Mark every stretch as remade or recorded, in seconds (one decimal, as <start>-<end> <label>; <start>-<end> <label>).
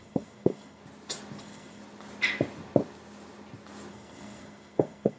0.0-0.8 remade; 0.8-1.4 recorded; 1.4-1.8 remade; 1.8-3.9 recorded; 3.9-5.2 remade